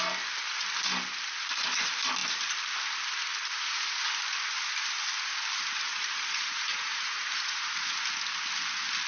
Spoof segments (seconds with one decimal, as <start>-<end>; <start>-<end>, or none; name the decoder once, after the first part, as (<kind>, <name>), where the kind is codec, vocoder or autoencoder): 5.9-7.9 (vocoder, Vocos)